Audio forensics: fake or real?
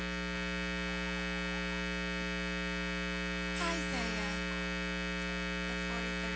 real